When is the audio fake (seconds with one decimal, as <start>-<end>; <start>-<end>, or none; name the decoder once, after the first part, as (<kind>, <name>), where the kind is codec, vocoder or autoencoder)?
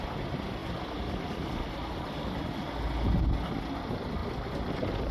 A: none